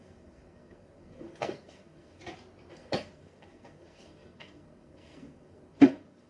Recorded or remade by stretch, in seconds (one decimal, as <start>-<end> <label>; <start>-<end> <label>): 0.0-2.2 remade; 2.2-2.7 recorded; 2.7-6.3 remade